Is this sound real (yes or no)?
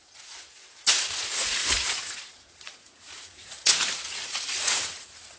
no